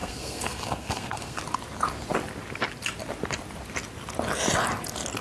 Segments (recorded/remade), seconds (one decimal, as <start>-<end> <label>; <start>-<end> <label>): 0.0-1.4 remade; 1.4-5.2 recorded